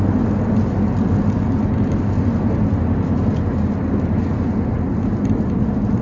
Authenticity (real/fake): real